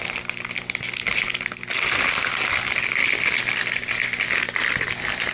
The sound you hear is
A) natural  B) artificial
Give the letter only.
A